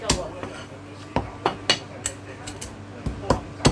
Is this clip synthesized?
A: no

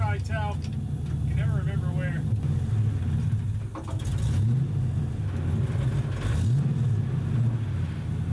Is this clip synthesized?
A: no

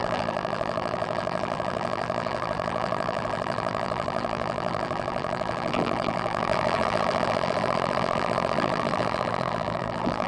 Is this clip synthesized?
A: yes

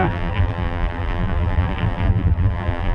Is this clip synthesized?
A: yes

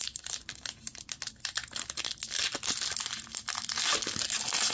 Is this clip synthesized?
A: no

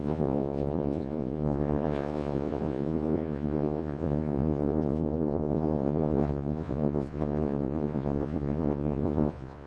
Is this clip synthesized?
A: yes